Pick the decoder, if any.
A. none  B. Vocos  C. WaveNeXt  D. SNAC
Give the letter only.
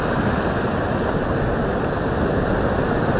A